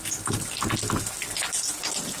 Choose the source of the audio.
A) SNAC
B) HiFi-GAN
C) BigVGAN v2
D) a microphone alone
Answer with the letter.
D